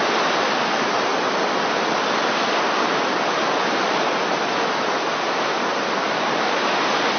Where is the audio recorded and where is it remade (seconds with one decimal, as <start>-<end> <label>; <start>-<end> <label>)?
0.0-7.2 recorded